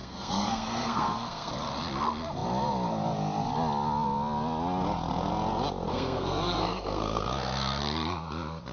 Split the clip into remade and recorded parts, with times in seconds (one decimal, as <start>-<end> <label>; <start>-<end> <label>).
0.0-1.5 remade; 1.5-5.9 recorded; 5.9-7.8 remade; 7.8-8.7 recorded